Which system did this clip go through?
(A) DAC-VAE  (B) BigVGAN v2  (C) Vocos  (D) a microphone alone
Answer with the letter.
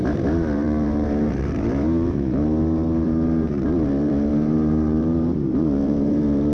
B